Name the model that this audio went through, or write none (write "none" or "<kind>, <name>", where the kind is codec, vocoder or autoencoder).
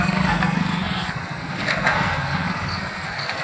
codec, SNAC